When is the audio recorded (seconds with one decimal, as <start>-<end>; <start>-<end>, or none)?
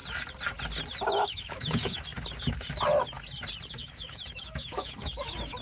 0.0-1.2; 2.1-3.7